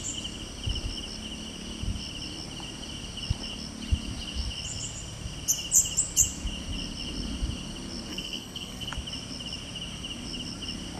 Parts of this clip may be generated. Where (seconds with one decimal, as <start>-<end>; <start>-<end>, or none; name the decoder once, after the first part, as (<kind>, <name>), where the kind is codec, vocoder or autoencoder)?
8.1-8.9 (codec, SNAC)